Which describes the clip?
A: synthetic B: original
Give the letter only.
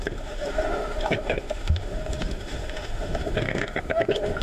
A